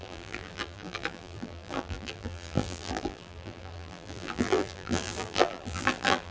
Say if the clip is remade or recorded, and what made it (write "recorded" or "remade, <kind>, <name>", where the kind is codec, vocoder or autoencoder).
remade, vocoder, BigVGAN v2